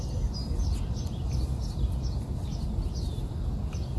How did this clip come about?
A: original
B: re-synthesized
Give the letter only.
A